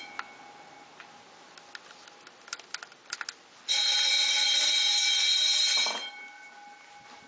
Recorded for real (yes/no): yes